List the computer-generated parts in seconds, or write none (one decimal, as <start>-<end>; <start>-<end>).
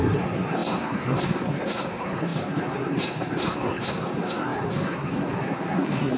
0.0-6.2